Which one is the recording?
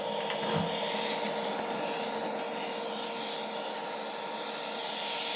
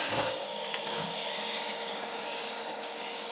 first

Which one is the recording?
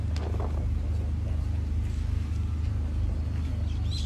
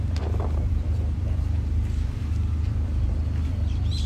first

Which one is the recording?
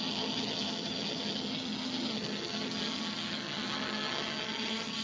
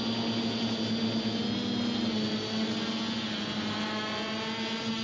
second